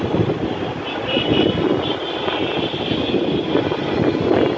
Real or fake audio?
real